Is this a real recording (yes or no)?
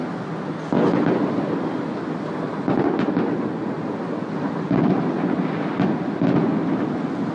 yes